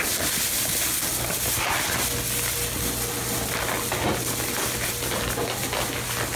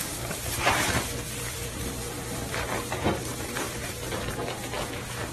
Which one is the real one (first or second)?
first